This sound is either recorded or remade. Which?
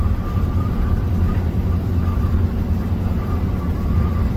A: remade